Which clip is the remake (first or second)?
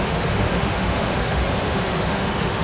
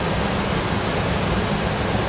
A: first